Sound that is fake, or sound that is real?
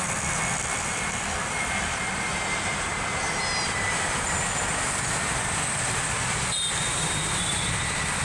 fake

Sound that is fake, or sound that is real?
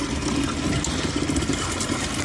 real